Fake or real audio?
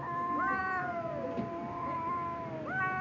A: real